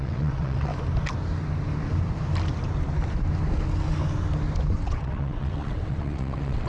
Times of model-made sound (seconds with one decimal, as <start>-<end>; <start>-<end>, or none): 0.0-0.7; 4.7-6.7